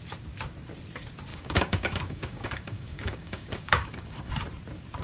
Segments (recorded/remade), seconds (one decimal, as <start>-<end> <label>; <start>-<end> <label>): 0.0-1.3 recorded; 1.3-4.3 remade; 4.3-5.0 recorded